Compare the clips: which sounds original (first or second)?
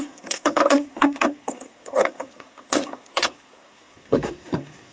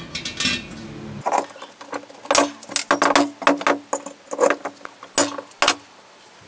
second